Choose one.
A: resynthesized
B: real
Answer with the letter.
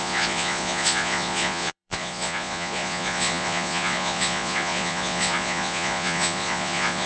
A